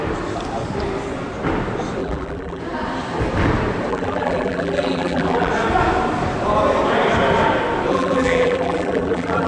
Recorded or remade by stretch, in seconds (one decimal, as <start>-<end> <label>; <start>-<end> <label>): 0.0-2.0 recorded; 2.0-2.6 remade; 2.6-3.9 recorded; 3.9-5.5 remade; 5.5-7.9 recorded; 7.9-9.5 remade